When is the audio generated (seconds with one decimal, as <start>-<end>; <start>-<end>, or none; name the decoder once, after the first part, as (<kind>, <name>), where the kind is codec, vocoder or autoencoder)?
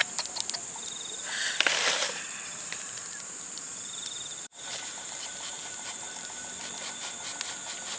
2.0-6.6 (vocoder, BigVGAN v2)